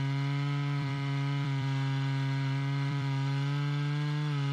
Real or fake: fake